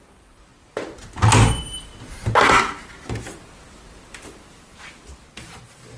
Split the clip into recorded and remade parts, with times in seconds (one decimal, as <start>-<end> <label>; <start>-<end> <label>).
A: 0.0-0.5 remade; 0.5-1.5 recorded; 1.5-1.9 remade; 1.9-5.5 recorded; 5.5-6.0 remade